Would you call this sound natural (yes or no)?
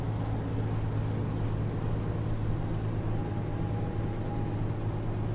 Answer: yes